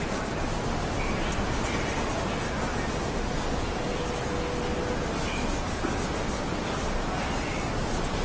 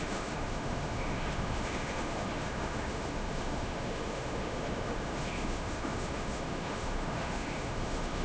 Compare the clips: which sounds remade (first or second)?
second